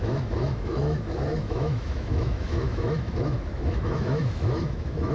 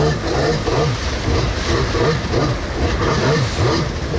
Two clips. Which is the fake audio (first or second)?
first